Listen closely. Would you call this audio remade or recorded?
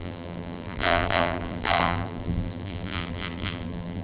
remade